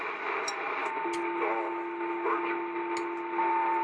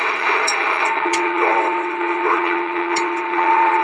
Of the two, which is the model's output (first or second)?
second